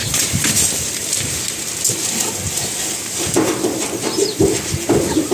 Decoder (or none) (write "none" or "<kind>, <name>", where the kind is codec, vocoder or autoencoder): none